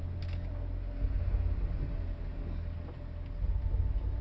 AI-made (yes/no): no